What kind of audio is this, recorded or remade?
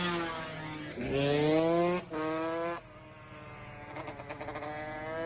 recorded